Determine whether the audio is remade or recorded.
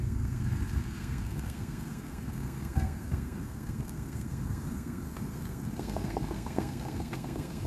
remade